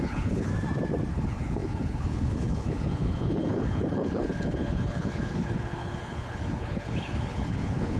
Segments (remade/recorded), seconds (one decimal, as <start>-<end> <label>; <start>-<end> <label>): 0.0-0.5 remade; 0.5-1.1 recorded; 1.1-8.0 remade